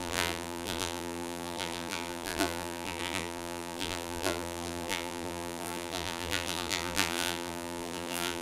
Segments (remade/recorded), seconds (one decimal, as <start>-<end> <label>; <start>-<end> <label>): 0.0-8.4 remade